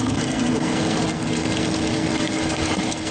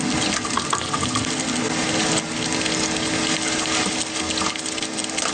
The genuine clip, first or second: second